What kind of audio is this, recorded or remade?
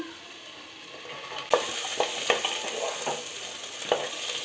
recorded